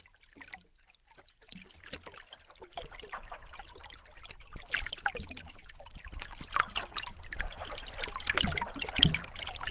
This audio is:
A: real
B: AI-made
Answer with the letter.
A